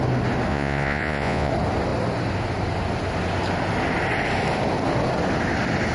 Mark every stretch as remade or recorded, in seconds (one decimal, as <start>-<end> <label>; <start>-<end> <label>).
0.0-0.5 recorded; 0.5-1.5 remade; 1.5-5.9 recorded